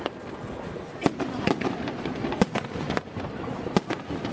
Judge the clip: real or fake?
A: real